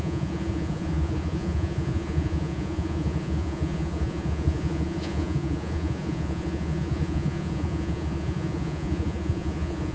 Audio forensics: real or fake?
fake